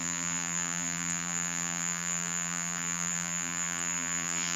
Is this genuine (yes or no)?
no